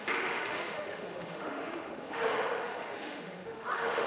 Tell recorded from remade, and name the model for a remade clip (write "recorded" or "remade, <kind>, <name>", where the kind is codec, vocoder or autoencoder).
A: remade, autoencoder, DAC-VAE